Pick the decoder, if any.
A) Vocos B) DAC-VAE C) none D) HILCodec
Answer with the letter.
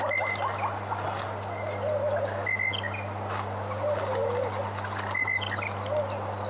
C